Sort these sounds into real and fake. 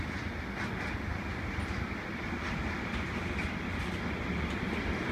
real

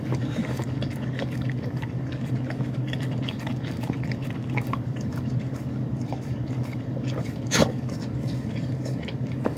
fake